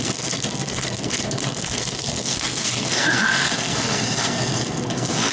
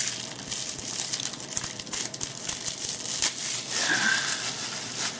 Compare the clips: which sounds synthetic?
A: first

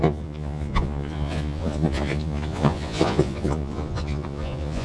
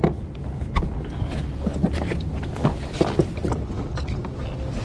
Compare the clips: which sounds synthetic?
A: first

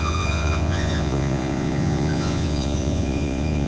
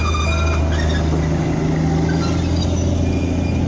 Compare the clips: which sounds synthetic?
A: first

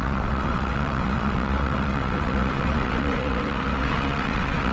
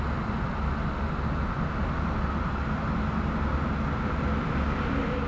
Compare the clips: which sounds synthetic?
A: first